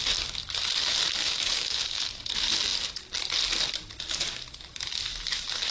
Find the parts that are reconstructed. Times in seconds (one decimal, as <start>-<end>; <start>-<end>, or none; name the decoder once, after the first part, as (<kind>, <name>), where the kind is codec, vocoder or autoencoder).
1.2-2.1 (codec, DAC)